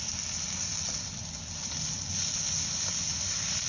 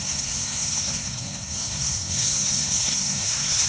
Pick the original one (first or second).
first